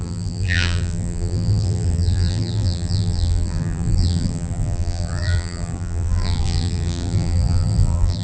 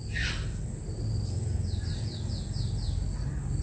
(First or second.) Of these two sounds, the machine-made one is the first